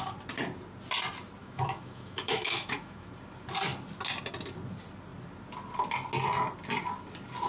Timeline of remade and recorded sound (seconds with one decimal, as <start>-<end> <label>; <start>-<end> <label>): 0.0-1.4 recorded; 1.4-3.1 remade; 3.1-7.5 recorded